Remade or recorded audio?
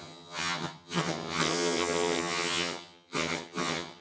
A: remade